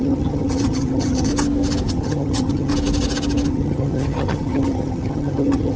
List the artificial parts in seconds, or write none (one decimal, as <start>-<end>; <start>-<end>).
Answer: 0.0-1.3; 1.9-2.7; 3.5-5.8